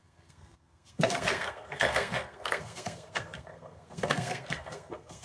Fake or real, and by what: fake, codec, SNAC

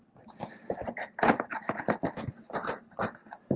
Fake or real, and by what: fake, vocoder, BigVGAN v2